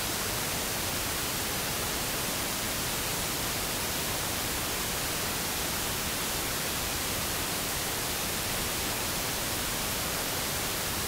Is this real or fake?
fake